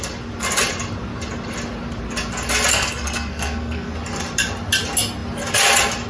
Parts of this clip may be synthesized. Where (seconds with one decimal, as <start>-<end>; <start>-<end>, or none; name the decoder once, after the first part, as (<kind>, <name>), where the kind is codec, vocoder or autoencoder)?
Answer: 2.7-3.9 (codec, SNAC)